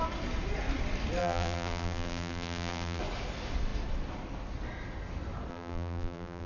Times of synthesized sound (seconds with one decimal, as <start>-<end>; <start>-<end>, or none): 1.2-3.0; 5.5-6.5